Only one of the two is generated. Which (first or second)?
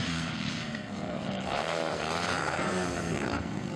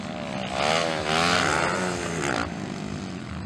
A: first